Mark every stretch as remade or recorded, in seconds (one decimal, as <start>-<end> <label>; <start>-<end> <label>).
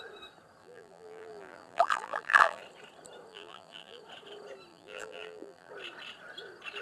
0.0-0.6 recorded; 0.6-2.6 remade; 2.6-3.3 recorded; 3.3-4.0 remade; 4.0-4.7 recorded; 4.7-5.7 remade; 5.7-6.8 recorded